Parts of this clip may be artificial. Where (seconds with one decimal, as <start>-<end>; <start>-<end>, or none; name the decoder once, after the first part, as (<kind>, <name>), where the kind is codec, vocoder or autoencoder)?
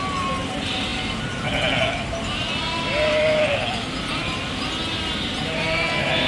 none